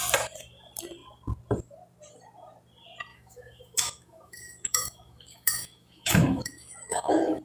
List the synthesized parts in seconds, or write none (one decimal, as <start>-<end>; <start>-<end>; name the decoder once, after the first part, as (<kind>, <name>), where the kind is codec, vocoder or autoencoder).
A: 3.1-7.4 (autoencoder, DAC-VAE)